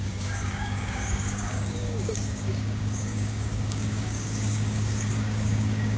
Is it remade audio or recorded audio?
remade